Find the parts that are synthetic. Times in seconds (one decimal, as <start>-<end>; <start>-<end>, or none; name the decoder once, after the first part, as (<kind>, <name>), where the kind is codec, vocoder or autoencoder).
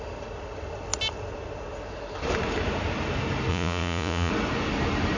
3.5-4.3 (vocoder, Vocos)